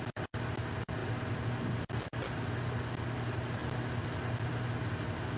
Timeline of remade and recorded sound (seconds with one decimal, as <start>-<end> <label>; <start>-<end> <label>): 0.0-5.4 recorded